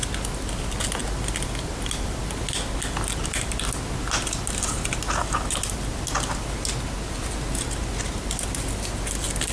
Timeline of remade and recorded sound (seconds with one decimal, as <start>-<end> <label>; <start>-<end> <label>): 0.0-9.5 recorded